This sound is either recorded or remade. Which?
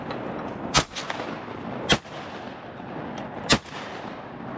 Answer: recorded